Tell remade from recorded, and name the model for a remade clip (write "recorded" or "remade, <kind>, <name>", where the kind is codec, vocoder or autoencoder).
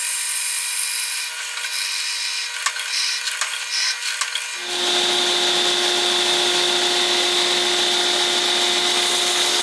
recorded